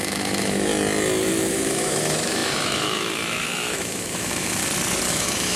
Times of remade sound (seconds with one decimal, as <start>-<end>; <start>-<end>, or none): 0.0-0.7; 1.5-4.6; 5.1-5.6